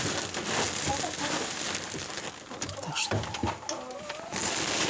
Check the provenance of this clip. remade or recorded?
recorded